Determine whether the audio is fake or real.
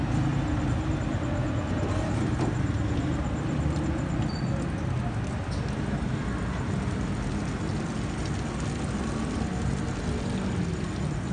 real